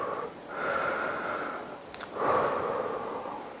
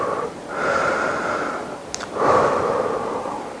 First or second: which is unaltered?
first